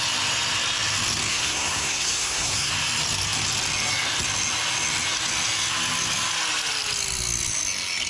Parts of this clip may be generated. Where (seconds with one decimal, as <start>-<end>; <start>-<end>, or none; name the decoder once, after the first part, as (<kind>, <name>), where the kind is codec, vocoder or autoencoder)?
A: 1.3-2.7 (codec, SNAC)

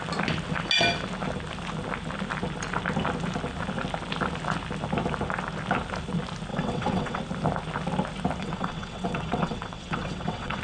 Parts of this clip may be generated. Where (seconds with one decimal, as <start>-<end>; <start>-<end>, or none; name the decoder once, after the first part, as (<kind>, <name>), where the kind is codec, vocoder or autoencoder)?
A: 6.5-7.2 (vocoder, WaveNeXt); 8.4-10.6